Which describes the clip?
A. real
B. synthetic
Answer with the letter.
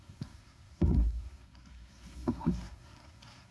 B